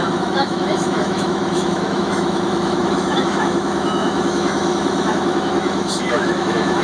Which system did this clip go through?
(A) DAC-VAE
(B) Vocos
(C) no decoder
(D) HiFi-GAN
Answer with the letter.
A